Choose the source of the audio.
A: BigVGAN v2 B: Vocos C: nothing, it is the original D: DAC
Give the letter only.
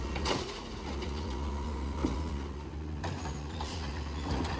B